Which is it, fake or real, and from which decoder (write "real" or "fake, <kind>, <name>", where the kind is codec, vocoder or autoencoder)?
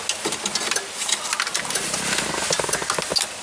real